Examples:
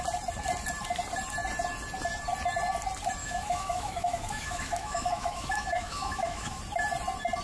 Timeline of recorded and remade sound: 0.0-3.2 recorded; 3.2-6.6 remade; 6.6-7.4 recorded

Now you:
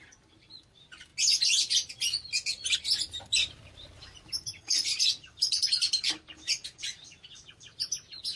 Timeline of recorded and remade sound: 0.0-1.1 remade; 1.1-3.2 recorded; 3.2-8.4 remade

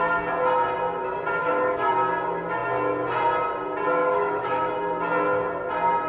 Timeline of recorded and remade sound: 0.0-1.4 recorded; 1.4-1.9 remade; 1.9-4.0 recorded; 4.0-4.7 remade; 4.7-6.1 recorded